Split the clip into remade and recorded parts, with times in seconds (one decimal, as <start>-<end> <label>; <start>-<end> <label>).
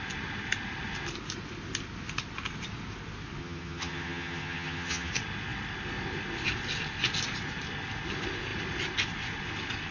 0.0-3.4 recorded; 3.4-5.1 remade; 5.1-9.9 recorded